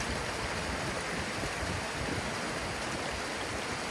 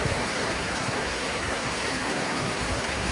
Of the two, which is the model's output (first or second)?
second